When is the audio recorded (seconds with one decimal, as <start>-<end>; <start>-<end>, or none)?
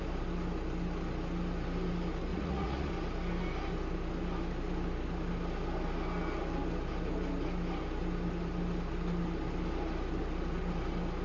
0.0-2.3; 2.9-11.2